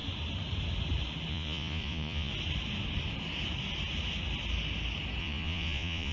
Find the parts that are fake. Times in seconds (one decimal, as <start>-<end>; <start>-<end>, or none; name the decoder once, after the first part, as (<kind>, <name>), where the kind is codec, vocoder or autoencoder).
1.3-2.3 (vocoder, Vocos); 5.2-6.1